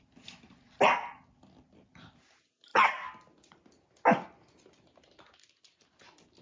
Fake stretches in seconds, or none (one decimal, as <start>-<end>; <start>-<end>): none